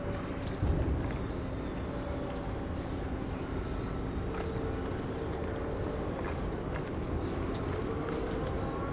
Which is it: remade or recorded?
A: recorded